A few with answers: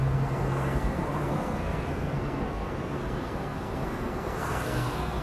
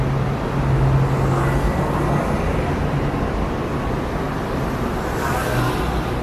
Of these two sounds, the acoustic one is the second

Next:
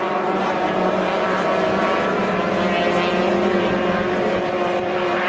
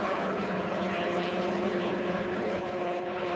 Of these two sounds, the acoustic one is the first